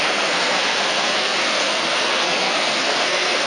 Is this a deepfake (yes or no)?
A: yes